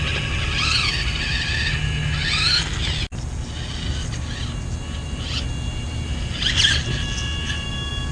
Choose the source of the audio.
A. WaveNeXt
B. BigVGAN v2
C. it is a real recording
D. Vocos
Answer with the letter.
C